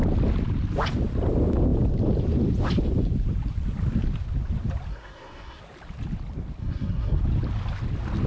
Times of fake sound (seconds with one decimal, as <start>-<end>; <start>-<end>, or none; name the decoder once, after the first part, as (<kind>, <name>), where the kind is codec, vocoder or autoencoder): 4.9-5.6 (codec, SNAC); 6.6-7.2